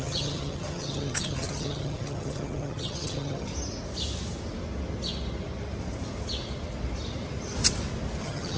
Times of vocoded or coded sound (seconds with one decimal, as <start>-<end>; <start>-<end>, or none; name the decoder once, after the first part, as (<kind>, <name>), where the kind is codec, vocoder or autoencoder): 0.0-3.5 (vocoder, HiFi-GAN); 8.2-8.6

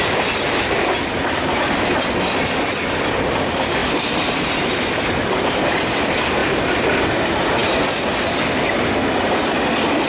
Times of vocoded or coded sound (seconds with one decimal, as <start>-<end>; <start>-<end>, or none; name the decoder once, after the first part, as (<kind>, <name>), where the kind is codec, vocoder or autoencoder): none

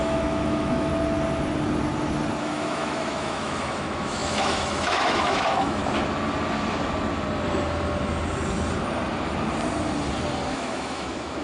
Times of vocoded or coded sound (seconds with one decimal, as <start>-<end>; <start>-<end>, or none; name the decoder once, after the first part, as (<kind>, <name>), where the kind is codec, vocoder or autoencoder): 0.0-0.9 (autoencoder, DAC-VAE); 2.4-5.8; 10.5-11.4

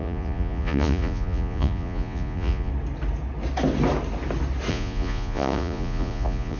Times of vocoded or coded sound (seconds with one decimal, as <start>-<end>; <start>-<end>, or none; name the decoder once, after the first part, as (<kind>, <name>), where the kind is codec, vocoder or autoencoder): 0.0-2.7 (vocoder, Vocos); 4.7-6.6

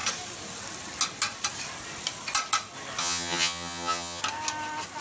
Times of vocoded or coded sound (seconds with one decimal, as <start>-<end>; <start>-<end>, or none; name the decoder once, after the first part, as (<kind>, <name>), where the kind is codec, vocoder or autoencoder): 3.0-4.2 (vocoder, HiFi-GAN)

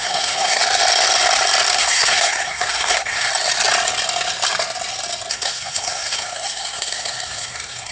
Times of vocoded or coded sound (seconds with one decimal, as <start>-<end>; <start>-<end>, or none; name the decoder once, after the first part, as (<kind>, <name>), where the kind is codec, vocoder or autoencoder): 0.0-0.6 (codec, SNAC); 1.7-3.3; 5.3-7.9

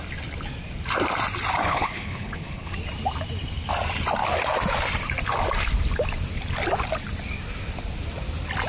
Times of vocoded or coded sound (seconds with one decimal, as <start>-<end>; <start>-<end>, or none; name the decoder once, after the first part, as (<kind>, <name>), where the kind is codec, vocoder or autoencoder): 1.6-2.7 (codec, HILCodec)

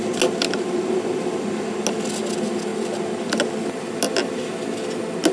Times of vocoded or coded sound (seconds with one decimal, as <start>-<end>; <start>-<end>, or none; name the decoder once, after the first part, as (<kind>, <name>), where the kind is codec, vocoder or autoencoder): none